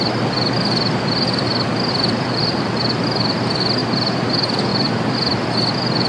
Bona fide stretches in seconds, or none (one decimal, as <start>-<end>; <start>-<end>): none